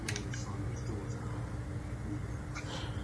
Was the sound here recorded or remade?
recorded